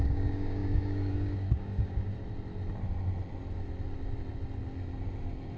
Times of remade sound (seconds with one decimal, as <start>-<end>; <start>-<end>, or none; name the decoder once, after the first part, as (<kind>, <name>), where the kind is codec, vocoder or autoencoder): 0.0-2.1 (codec, DAC)